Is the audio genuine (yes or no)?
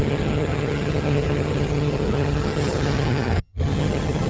no